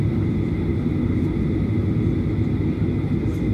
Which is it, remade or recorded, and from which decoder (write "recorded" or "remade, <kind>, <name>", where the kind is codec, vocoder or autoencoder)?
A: recorded